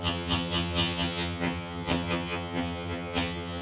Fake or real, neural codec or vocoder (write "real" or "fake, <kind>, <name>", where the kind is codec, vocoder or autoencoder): fake, vocoder, HiFi-GAN